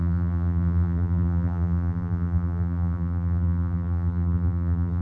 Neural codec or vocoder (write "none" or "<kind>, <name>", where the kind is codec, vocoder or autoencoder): vocoder, BigVGAN v2